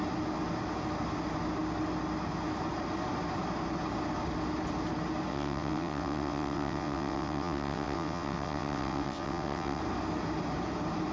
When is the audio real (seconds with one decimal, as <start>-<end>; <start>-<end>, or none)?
0.0-5.3; 9.8-11.1